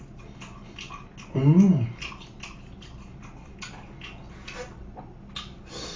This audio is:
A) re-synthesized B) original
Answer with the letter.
B